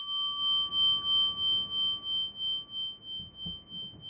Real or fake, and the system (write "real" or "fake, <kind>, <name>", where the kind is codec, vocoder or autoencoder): real